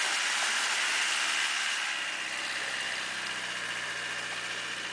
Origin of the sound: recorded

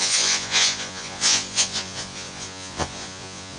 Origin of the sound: remade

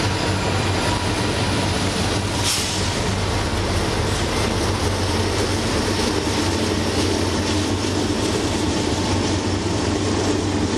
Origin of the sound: recorded